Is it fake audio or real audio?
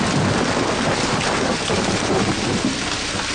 real